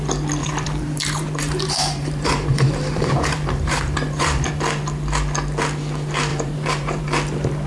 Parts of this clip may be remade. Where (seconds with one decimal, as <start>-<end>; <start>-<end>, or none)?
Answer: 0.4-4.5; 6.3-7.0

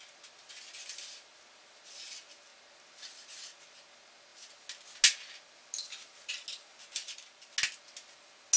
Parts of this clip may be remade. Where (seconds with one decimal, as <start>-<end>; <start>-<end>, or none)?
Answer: 7.0-7.5

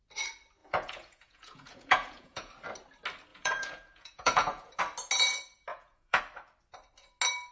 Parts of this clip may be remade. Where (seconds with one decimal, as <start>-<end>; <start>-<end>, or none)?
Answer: 0.6-2.5; 3.3-4.8; 5.7-6.2